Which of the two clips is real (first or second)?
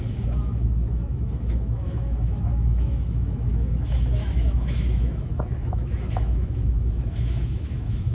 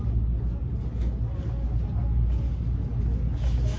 second